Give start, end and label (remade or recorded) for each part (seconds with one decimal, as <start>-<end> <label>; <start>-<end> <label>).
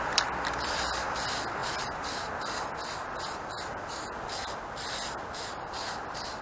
0.0-6.4 remade